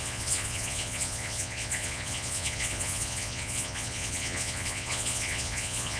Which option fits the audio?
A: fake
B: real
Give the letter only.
A